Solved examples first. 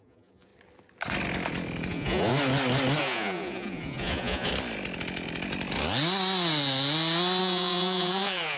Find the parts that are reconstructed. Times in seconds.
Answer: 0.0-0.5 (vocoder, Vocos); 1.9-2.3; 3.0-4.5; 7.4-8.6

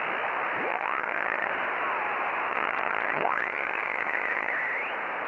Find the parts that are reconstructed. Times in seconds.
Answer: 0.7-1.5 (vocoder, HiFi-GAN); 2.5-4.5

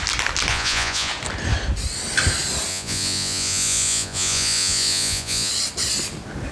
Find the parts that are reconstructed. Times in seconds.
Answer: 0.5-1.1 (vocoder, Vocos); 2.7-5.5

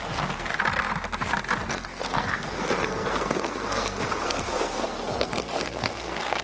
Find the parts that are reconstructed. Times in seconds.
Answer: 0.0-0.5 (codec, SNAC); 1.7-6.4

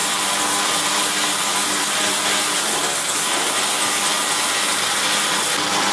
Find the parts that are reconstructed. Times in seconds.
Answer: 0.0-0.8 (vocoder, BigVGAN v2); 1.5-3.7; 4.7-5.5